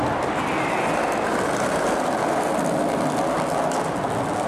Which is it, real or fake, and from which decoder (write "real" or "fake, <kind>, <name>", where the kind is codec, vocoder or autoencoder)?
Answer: real